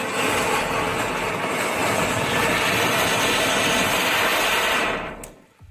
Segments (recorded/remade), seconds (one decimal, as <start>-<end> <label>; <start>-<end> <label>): 0.0-5.7 recorded